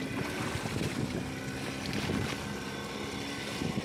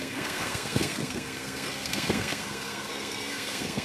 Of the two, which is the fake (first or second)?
second